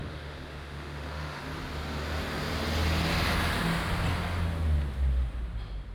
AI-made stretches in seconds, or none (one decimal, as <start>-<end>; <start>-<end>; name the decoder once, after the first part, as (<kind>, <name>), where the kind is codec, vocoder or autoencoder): 0.0-1.4 (autoencoder, DAC-VAE)